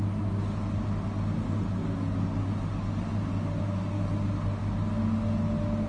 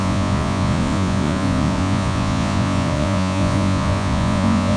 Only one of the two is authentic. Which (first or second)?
first